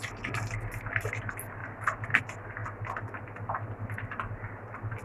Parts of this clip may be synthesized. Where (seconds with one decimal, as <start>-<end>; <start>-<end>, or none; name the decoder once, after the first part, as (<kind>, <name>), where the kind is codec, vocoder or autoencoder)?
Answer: none